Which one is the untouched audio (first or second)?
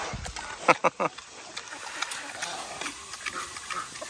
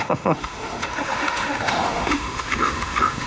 first